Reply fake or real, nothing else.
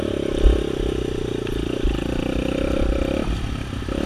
fake